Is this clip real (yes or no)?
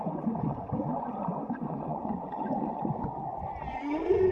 no